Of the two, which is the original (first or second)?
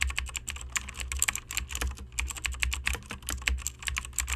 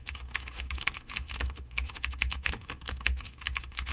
first